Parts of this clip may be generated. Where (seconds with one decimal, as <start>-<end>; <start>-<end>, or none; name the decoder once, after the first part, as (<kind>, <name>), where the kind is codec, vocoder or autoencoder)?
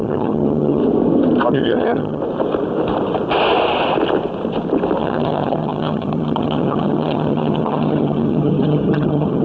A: 0.0-0.8 (vocoder, HiFi-GAN); 1.5-2.2; 5.0-9.4